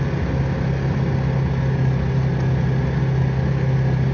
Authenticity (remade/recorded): recorded